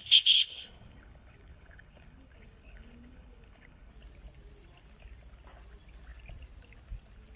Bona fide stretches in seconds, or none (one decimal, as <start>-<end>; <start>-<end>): 3.9-7.4